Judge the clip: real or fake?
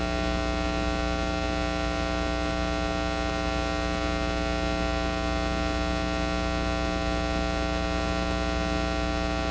real